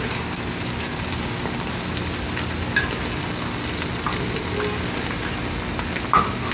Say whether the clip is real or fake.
real